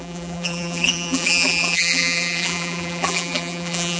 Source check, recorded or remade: remade